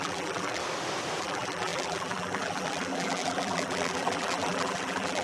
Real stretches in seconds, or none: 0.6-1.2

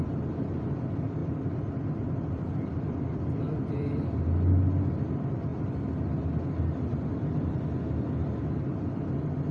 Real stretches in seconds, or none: 0.0-1.2; 4.2-9.5

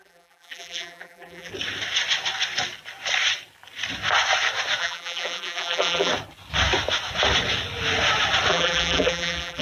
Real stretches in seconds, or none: 1.5-4.8; 6.1-8.5

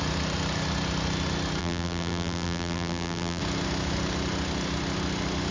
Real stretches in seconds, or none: 0.0-1.6; 3.4-5.5

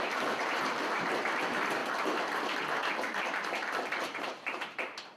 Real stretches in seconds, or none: 1.8-4.0